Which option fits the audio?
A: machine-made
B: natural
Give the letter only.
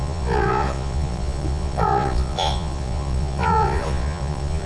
A